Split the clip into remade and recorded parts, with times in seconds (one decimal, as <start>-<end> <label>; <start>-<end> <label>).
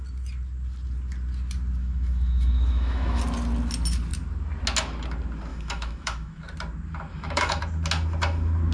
0.0-1.8 recorded; 1.8-3.2 remade; 3.2-5.5 recorded; 5.5-6.4 remade; 6.4-7.1 recorded; 7.1-7.6 remade; 7.6-8.7 recorded